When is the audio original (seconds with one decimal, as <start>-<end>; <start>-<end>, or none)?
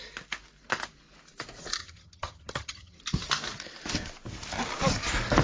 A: 0.0-1.8; 3.0-5.4